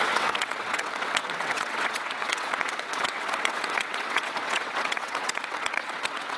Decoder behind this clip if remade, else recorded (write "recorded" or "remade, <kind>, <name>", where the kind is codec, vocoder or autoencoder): remade, vocoder, WaveNeXt